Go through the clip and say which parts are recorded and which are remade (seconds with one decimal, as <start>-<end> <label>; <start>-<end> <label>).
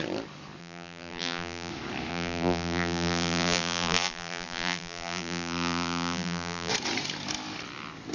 0.0-0.6 recorded; 0.6-1.7 remade; 1.7-2.1 recorded; 2.1-6.7 remade; 6.7-8.1 recorded